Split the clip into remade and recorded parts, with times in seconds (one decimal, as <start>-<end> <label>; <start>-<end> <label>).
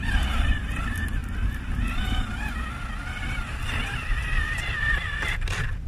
0.0-1.2 remade; 1.2-1.9 recorded; 1.9-2.7 remade; 2.7-3.3 recorded; 3.3-5.9 remade